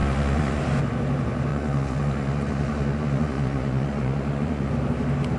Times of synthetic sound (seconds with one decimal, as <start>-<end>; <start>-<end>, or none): 0.0-0.6; 1.5-4.7